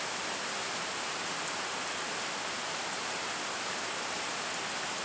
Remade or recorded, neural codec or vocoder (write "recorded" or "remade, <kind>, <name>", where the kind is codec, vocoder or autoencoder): recorded